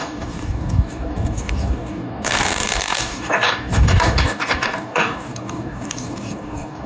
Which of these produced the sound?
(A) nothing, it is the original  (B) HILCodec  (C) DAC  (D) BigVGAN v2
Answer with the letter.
C